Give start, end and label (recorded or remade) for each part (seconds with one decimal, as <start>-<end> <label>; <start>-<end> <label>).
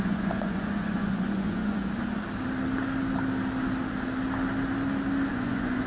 0.0-1.8 remade; 1.8-5.3 recorded; 5.3-5.9 remade